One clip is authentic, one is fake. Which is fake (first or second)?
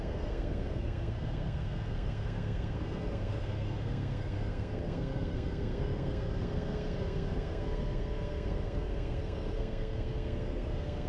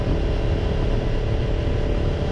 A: first